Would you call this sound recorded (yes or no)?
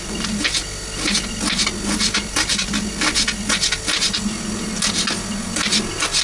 yes